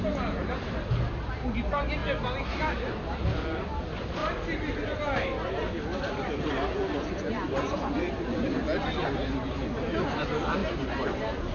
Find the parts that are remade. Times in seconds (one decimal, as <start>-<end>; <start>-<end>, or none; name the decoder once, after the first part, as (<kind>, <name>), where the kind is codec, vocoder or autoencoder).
none